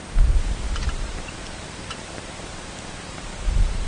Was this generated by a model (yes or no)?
yes